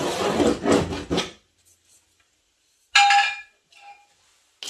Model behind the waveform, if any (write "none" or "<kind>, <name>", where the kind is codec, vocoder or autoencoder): none